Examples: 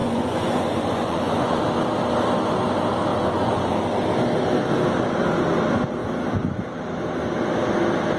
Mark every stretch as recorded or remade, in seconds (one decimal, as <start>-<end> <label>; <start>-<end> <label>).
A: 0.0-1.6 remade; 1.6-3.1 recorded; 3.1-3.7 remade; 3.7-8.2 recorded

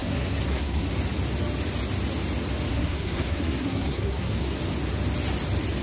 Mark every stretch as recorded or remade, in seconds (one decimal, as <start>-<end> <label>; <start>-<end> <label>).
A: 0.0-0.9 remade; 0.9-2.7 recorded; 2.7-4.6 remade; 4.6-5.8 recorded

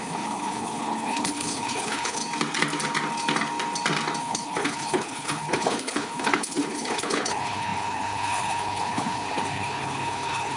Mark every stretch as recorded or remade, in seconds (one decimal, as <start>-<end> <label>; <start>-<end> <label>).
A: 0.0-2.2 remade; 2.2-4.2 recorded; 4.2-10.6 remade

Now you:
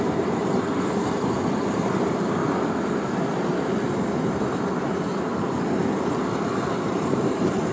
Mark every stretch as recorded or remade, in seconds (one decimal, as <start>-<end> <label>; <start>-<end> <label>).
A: 0.0-2.4 remade; 2.4-6.5 recorded; 6.5-7.7 remade

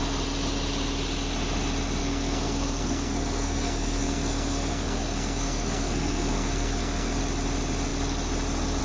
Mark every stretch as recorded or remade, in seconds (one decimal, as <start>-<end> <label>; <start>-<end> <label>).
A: 0.0-2.0 recorded; 2.0-7.2 remade; 7.2-8.8 recorded